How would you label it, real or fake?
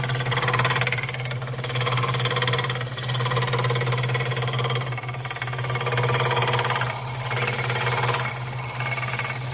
real